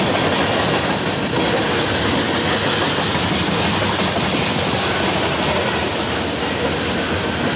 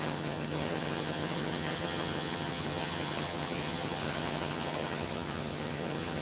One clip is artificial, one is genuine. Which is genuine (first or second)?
first